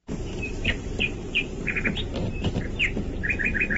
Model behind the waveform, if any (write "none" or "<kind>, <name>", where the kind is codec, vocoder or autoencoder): vocoder, BigVGAN v2